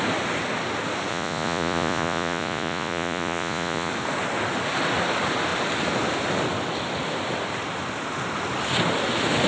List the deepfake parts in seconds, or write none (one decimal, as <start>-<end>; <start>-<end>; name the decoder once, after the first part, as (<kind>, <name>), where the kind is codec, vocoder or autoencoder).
1.1-3.9 (vocoder, Vocos)